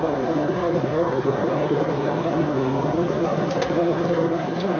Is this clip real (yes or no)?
no